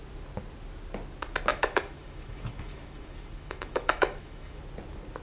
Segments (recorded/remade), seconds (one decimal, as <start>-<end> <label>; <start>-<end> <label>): 0.0-1.5 recorded; 1.5-4.6 remade; 4.6-5.2 recorded